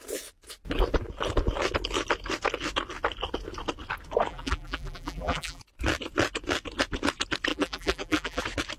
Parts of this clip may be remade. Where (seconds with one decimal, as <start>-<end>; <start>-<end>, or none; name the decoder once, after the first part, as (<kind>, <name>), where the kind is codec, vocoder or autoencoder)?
4.3-5.6 (vocoder, BigVGAN v2); 7.5-8.4